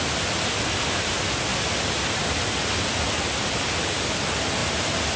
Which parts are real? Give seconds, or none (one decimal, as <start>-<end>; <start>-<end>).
0.0-5.2